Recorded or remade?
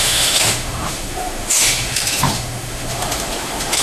remade